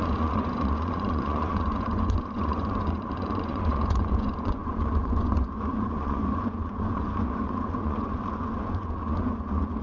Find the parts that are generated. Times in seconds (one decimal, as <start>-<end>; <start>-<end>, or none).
0.0-9.8